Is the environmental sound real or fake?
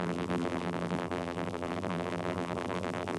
fake